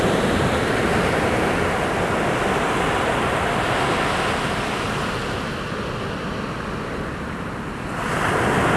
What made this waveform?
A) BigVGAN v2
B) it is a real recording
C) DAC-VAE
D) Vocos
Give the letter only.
B